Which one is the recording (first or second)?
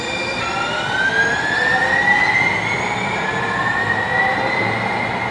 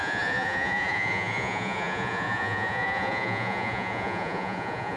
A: first